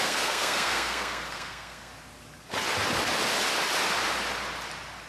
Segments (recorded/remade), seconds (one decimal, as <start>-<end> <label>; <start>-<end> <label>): 0.0-1.9 remade; 1.9-5.1 recorded